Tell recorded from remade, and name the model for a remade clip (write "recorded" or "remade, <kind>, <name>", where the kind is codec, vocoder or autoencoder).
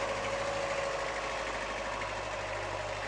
recorded